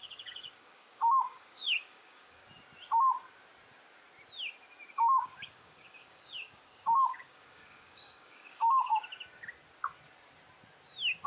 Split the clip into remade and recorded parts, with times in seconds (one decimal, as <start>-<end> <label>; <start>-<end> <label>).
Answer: 0.0-2.4 remade; 2.4-4.9 recorded; 4.9-8.9 remade; 8.9-11.3 recorded